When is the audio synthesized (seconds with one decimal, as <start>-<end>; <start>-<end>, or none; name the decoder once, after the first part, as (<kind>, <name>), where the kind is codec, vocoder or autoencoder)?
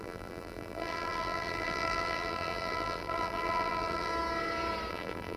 0.0-4.1 (vocoder, BigVGAN v2); 4.9-5.4